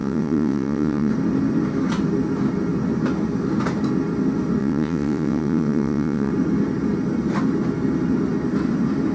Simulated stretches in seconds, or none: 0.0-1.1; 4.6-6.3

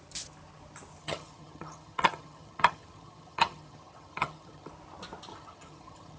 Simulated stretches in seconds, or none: 1.0-4.7; 5.3-6.2

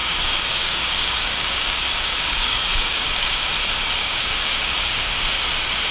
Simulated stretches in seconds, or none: 0.0-3.5; 4.0-5.1

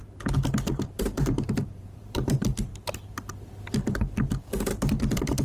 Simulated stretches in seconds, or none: 0.7-2.7; 4.7-5.4

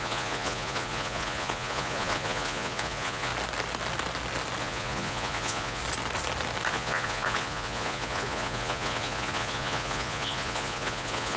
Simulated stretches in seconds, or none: 0.0-3.3; 4.6-5.8; 6.7-11.4

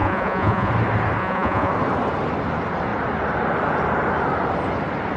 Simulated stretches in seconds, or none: 0.0-0.7; 1.2-1.7

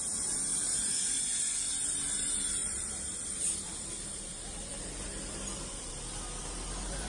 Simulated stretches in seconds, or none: 0.5-1.2; 2.6-5.9